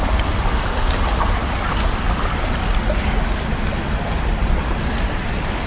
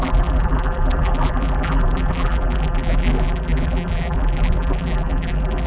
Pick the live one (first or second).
first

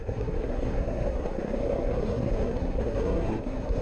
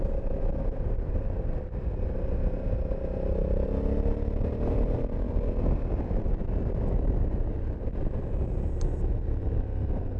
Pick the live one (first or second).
second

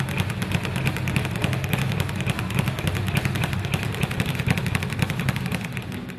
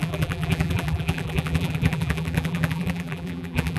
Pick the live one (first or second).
first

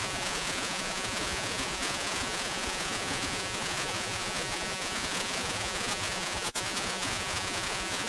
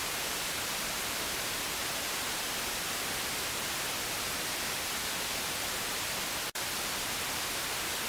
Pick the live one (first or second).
second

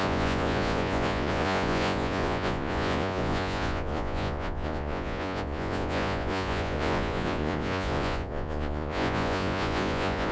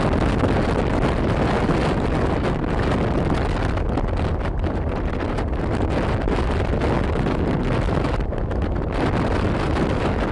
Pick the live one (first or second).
second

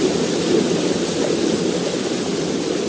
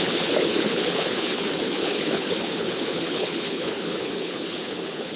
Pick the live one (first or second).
first